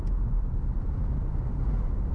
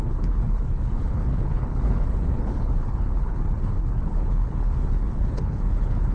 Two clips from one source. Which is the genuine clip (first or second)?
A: first